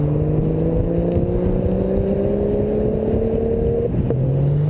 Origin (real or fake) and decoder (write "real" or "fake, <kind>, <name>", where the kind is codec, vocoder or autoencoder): real